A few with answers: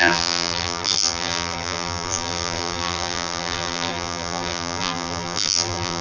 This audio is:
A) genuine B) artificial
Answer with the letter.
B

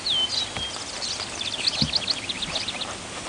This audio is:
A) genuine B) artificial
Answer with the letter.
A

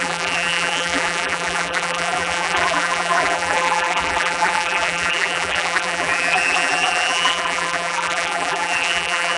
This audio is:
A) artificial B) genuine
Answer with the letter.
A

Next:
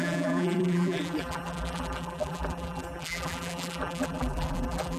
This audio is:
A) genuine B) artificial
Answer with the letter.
B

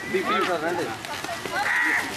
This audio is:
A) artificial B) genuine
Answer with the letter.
B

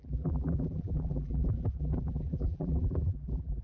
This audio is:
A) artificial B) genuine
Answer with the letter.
A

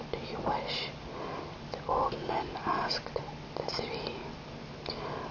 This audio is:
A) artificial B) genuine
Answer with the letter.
B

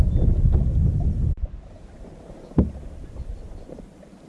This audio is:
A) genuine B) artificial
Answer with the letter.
B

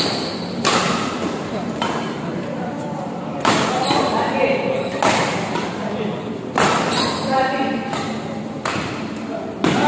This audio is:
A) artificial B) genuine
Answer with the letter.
A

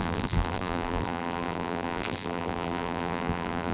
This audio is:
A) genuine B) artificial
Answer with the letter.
B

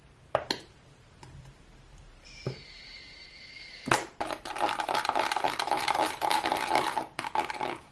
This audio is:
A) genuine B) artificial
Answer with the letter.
B